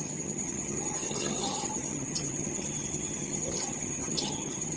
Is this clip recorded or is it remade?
remade